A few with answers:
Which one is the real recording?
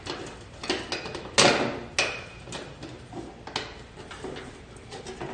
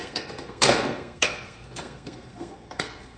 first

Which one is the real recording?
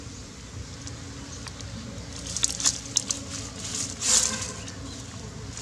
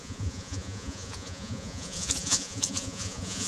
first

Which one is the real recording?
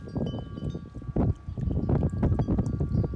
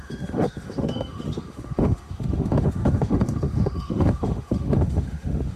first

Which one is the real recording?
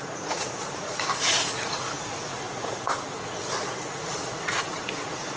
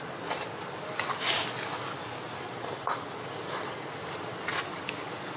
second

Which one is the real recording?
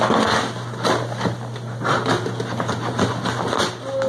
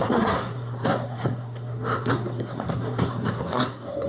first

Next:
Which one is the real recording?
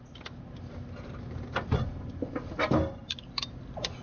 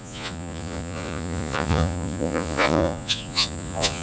first